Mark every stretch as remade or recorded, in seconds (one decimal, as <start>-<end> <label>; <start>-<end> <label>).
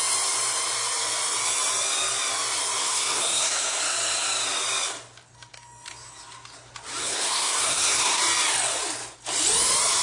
0.0-2.8 recorded; 2.8-3.8 remade; 3.8-7.0 recorded; 7.0-8.2 remade; 8.2-10.0 recorded